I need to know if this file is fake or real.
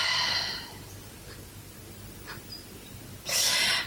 real